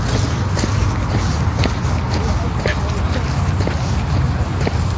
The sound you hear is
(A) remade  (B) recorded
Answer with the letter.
B